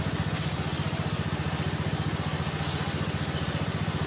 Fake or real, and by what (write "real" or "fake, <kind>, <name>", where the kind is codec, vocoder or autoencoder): real